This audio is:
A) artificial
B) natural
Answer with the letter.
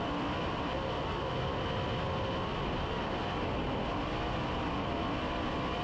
B